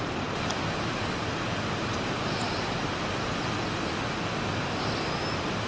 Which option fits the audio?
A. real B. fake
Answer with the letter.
A